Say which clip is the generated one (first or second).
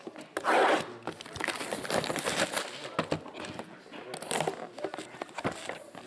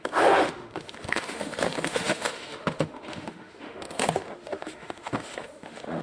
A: second